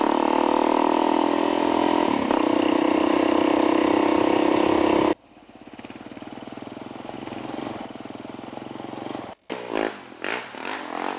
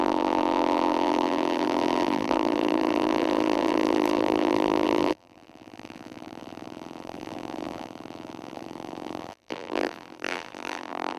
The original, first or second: first